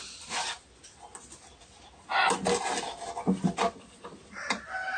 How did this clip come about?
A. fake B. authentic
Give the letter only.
B